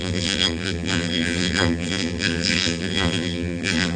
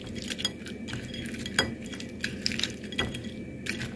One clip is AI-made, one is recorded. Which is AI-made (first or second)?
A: first